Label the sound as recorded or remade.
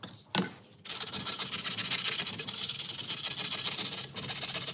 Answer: recorded